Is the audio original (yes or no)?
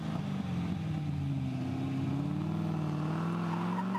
yes